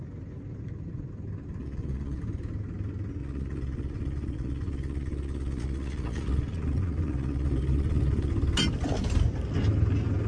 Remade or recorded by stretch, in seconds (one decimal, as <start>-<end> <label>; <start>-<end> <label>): 0.0-1.6 recorded; 1.6-2.2 remade; 2.2-3.2 recorded; 3.2-8.3 remade; 8.3-10.3 recorded